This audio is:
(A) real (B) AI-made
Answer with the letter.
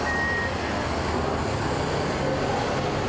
A